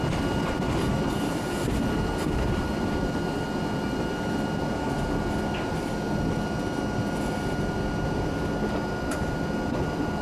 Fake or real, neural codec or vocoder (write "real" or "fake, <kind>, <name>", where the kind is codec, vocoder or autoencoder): real